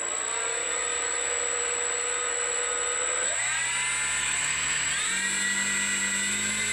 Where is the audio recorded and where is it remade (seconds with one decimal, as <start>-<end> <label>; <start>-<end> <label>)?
0.0-4.2 recorded; 4.2-4.9 remade; 4.9-6.7 recorded